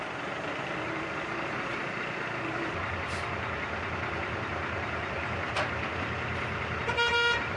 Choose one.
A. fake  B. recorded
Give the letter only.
A